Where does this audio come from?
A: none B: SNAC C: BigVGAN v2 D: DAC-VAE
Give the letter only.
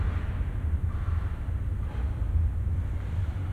A